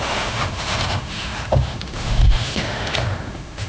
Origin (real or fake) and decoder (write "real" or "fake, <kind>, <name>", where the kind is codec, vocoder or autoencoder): fake, autoencoder, DAC-VAE